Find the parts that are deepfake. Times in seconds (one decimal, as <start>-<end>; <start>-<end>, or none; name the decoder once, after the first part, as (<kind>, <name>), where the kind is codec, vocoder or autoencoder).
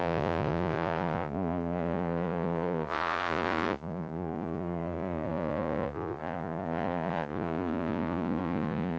0.0-9.0 (vocoder, Vocos)